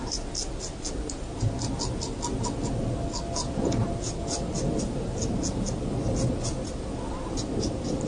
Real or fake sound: real